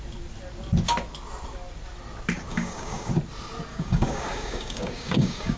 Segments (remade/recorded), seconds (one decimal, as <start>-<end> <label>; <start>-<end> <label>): 0.0-2.5 recorded; 2.5-3.1 remade; 3.1-3.7 recorded; 3.7-5.6 remade